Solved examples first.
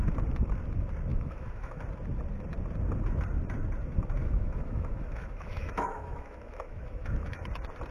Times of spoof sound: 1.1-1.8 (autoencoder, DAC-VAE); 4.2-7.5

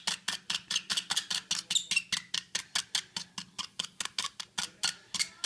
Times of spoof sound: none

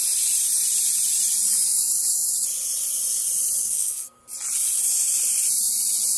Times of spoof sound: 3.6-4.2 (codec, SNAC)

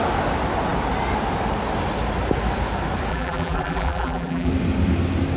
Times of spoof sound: 3.1-4.5 (vocoder, BigVGAN v2)